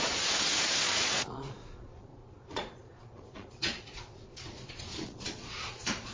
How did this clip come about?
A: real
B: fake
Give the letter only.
B